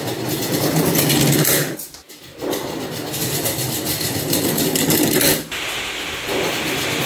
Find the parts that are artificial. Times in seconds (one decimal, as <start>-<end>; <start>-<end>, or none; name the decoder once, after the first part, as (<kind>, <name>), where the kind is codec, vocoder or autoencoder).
none

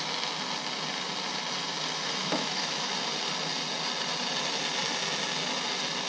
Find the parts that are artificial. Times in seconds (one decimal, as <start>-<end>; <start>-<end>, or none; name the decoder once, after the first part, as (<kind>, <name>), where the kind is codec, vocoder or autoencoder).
2.2-2.9 (autoencoder, DAC-VAE)

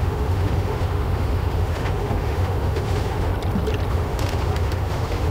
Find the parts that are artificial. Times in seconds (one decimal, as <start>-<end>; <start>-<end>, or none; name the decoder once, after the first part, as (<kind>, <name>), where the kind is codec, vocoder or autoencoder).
0.0-3.3 (autoencoder, DAC-VAE); 3.9-5.3

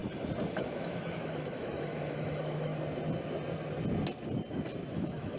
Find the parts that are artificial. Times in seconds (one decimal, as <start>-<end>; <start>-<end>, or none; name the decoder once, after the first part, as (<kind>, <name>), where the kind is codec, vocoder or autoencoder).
0.5-2.7 (autoencoder, DAC-VAE); 4.9-5.4

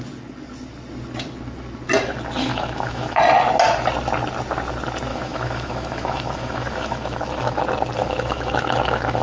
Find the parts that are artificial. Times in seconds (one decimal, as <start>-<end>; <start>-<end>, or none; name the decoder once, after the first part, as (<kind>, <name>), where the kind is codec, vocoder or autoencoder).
2.5-3.2 (autoencoder, DAC-VAE); 5.1-7.6; 8.0-9.2

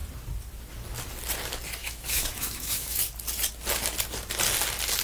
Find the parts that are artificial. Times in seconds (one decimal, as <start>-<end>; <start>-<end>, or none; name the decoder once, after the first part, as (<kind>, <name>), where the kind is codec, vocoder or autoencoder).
1.8-3.0 (autoencoder, DAC-VAE)

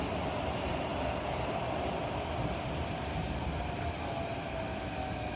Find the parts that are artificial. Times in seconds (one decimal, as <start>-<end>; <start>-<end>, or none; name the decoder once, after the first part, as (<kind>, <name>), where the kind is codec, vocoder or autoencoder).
4.7-5.4 (autoencoder, DAC-VAE)

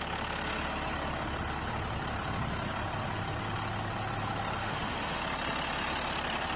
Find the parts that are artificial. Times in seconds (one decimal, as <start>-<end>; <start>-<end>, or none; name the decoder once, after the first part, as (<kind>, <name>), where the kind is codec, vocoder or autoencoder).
4.6-5.2 (autoencoder, DAC-VAE)